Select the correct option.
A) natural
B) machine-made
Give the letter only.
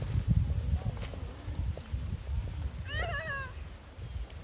A